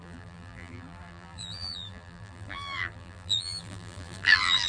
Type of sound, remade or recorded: remade